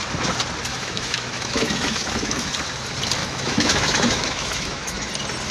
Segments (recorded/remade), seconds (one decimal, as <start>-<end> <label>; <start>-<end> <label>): 0.0-0.7 recorded; 0.7-2.5 remade; 2.5-3.2 recorded; 3.2-5.1 remade; 5.1-5.5 recorded